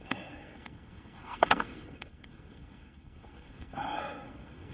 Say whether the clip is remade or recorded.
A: remade